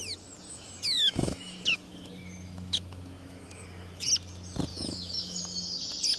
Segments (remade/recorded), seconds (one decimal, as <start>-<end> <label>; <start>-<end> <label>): 0.0-0.5 recorded; 0.5-4.1 remade; 4.1-4.7 recorded; 4.7-5.4 remade; 5.4-6.2 recorded